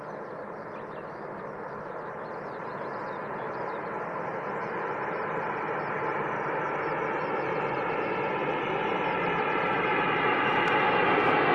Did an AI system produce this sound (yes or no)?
no